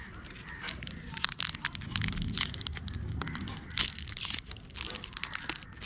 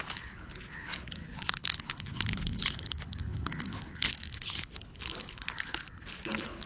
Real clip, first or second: first